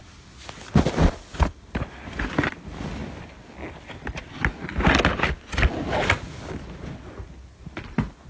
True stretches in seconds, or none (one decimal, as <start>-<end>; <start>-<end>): 0.0-8.3

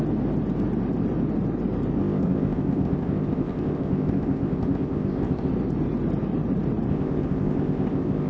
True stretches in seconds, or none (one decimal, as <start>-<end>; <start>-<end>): 0.0-2.0; 5.5-6.9

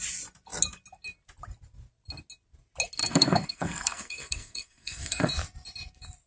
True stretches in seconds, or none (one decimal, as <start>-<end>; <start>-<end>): 0.0-3.0; 5.3-6.3

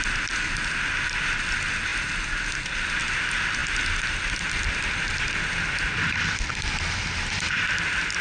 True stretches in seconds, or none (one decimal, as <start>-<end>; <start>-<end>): 0.0-8.2

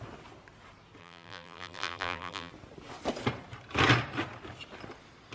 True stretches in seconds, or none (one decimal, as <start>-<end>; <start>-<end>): 0.0-1.0; 2.5-5.3